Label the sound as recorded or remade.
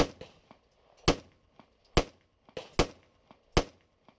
recorded